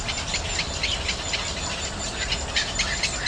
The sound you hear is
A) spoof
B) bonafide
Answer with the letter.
B